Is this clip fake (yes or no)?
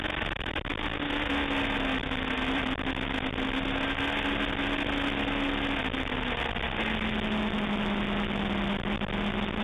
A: no